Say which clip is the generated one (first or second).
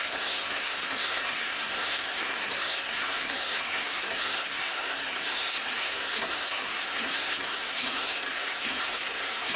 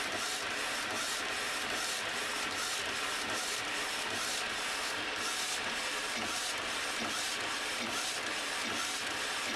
first